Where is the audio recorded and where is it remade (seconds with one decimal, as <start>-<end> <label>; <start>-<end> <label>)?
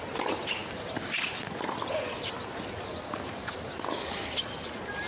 0.0-5.1 recorded